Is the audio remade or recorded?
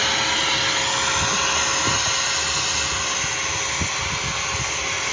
recorded